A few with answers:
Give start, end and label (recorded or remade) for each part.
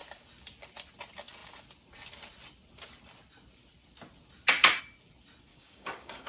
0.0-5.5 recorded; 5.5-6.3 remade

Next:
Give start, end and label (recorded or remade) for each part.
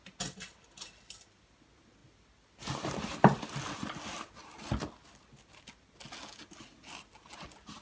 0.0-7.8 recorded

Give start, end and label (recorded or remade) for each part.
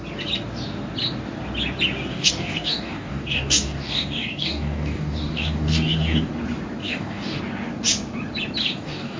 0.0-2.1 recorded; 2.1-6.3 remade; 6.3-6.8 recorded; 6.8-7.4 remade; 7.4-8.6 recorded; 8.6-9.2 remade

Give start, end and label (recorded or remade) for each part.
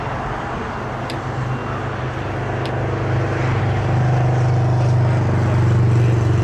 0.0-6.4 recorded